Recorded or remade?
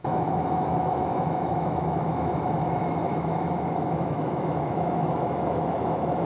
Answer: remade